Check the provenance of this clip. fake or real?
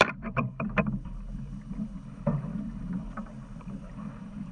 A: fake